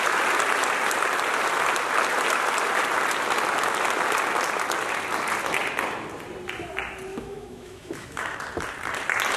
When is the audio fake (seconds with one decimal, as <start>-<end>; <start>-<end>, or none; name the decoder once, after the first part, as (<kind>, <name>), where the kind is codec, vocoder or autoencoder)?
7.1-8.4 (autoencoder, DAC-VAE)